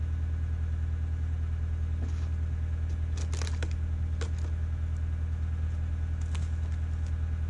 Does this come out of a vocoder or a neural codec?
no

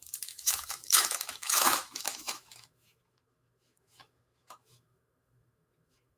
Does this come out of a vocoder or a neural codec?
yes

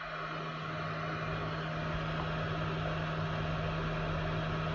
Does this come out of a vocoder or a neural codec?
no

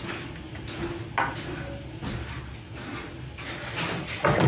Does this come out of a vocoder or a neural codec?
no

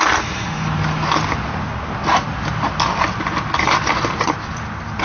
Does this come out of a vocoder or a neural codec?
no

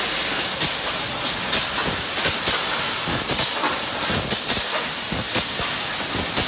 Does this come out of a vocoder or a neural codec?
no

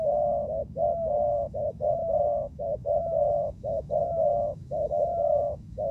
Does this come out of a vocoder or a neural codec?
yes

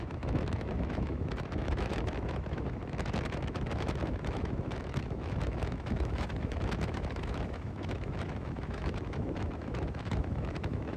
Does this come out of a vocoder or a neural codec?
yes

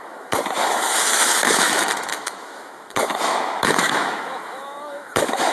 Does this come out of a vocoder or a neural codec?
yes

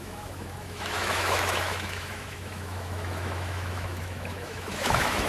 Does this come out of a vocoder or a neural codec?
yes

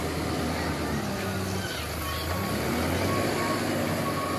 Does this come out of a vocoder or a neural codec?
no